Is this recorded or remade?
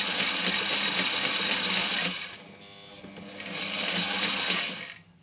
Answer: recorded